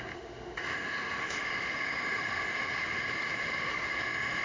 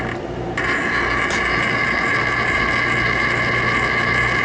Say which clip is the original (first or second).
second